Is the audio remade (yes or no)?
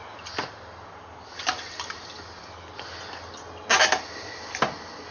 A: no